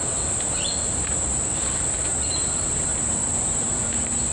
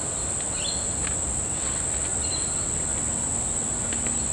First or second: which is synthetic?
first